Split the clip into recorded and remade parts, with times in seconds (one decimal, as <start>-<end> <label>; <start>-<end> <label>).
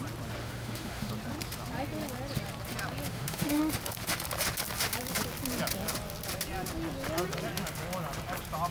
0.0-0.4 recorded; 0.4-1.1 remade; 1.1-3.1 recorded; 3.1-3.6 remade; 3.6-8.7 recorded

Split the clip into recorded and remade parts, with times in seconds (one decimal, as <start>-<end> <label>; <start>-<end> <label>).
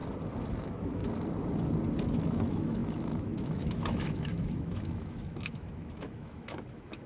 0.0-0.6 recorded; 0.6-1.0 remade; 1.0-2.1 recorded; 2.1-7.1 remade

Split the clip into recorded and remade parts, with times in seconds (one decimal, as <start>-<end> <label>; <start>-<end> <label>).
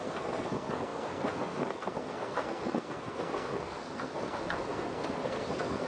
0.0-5.9 remade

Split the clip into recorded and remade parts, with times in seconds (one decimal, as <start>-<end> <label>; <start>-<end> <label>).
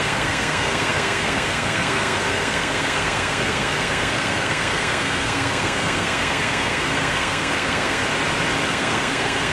0.0-8.0 remade; 8.0-8.7 recorded; 8.7-9.5 remade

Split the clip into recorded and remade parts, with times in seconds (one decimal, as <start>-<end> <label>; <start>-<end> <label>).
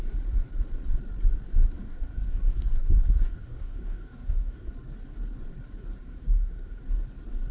0.0-1.6 recorded; 1.6-4.7 remade; 4.7-6.0 recorded; 6.0-6.8 remade; 6.8-7.5 recorded